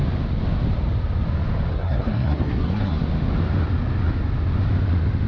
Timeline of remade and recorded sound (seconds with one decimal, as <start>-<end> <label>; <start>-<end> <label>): 0.0-1.7 recorded; 1.7-3.0 remade; 3.0-5.3 recorded